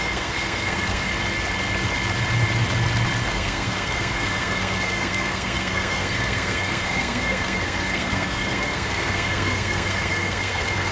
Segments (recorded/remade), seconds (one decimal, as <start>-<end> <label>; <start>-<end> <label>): 0.0-1.1 remade; 1.1-3.3 recorded; 3.3-10.9 remade